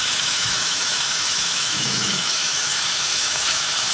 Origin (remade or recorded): remade